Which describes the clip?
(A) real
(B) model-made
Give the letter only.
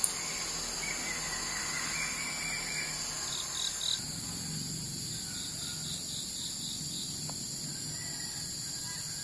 A